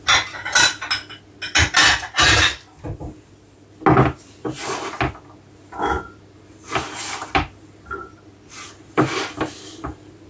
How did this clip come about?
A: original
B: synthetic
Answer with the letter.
A